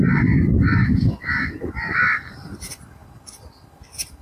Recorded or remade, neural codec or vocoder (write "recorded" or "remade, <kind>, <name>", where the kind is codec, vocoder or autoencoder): remade, vocoder, BigVGAN v2